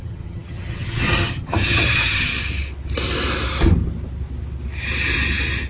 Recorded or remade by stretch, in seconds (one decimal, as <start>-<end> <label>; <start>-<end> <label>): 0.0-2.3 remade; 2.3-5.7 recorded